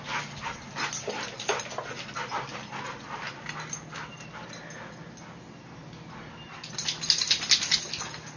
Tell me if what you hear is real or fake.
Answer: real